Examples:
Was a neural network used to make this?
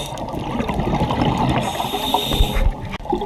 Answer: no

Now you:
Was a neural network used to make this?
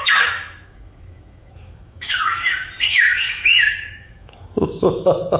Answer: yes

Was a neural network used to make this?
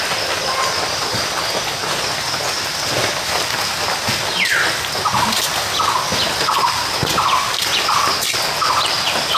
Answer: no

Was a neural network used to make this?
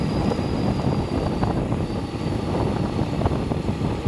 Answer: no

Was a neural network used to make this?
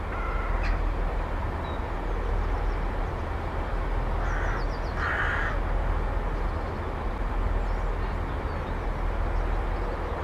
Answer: no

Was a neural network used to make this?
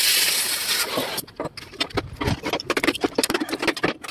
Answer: no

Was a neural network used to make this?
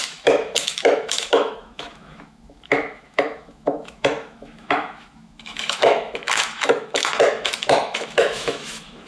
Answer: yes